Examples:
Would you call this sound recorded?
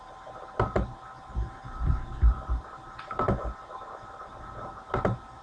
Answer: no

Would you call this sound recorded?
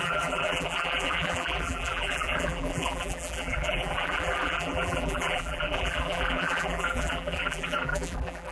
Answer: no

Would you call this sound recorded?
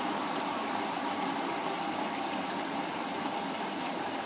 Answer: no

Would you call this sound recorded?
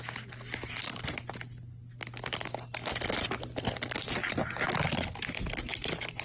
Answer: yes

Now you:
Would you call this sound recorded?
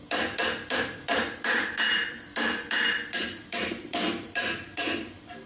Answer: no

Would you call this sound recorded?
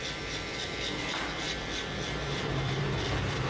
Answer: no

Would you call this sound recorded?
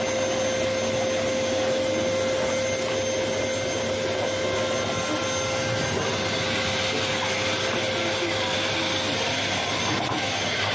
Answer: yes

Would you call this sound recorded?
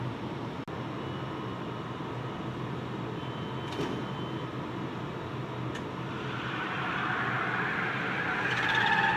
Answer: yes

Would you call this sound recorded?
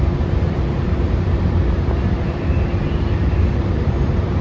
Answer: no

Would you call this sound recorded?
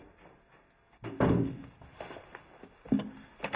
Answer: yes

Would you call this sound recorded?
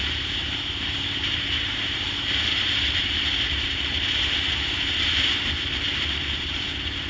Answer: no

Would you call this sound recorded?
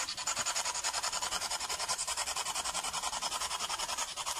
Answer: no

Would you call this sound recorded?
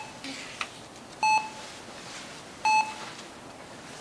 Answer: yes